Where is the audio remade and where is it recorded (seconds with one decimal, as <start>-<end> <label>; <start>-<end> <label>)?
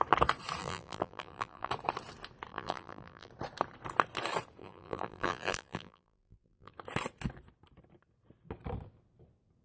0.0-0.6 recorded; 0.6-1.7 remade; 1.7-2.5 recorded; 2.5-3.3 remade; 3.3-4.6 recorded; 4.6-6.7 remade; 6.7-9.6 recorded